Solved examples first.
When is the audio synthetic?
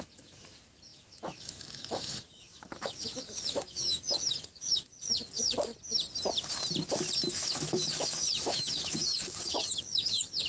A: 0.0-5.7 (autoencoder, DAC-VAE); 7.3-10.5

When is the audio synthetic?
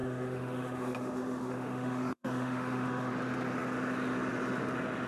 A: 0.0-3.1 (autoencoder, DAC-VAE)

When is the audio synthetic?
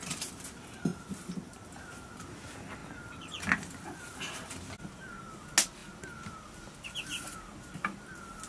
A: none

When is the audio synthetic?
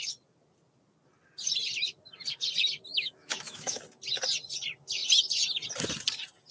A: 2.9-3.8 (autoencoder, DAC-VAE)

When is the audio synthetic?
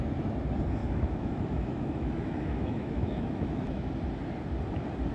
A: 0.8-3.9 (autoencoder, DAC-VAE)